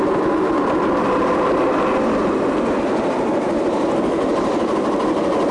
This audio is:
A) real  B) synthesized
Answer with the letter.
A